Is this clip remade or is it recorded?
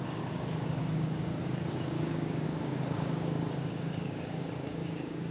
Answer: remade